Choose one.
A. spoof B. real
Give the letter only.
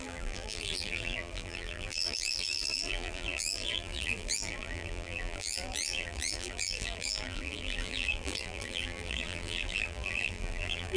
A